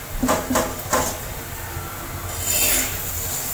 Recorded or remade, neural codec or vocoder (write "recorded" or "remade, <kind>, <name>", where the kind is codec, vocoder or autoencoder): recorded